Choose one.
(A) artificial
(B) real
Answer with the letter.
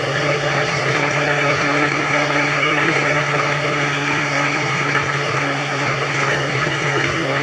A